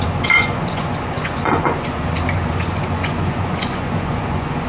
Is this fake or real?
fake